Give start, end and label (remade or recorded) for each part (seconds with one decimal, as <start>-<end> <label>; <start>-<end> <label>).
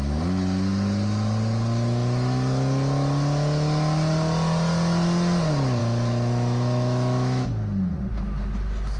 0.0-5.8 recorded; 5.8-7.5 remade; 7.5-9.0 recorded